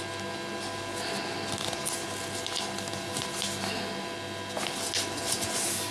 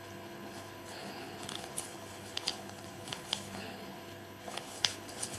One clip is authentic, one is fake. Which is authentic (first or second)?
first